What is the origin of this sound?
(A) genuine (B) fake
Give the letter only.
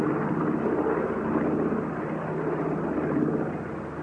A